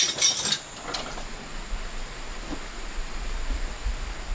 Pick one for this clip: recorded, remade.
recorded